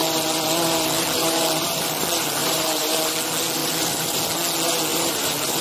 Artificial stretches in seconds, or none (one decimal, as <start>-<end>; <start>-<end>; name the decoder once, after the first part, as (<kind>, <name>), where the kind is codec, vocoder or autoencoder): 0.0-2.0 (vocoder, BigVGAN v2); 2.4-3.0; 3.6-4.2; 4.9-5.6